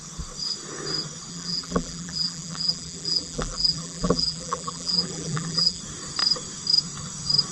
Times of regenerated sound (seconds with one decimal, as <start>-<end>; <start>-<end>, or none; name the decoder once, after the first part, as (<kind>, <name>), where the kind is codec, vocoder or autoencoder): 1.3-5.8 (vocoder, BigVGAN v2)